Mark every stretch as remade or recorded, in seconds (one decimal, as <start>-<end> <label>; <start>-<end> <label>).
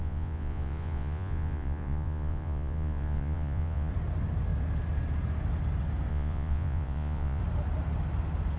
0.0-3.9 remade; 3.9-6.1 recorded; 6.1-7.4 remade; 7.4-8.6 recorded